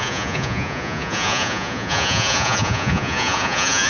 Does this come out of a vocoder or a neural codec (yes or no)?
yes